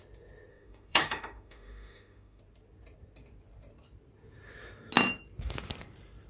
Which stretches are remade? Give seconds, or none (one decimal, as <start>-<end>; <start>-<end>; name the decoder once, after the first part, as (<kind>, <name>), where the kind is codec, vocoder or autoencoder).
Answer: 0.5-2.4 (autoencoder, DAC-VAE)